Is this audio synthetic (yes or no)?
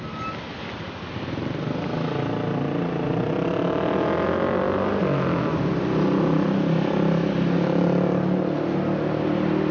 no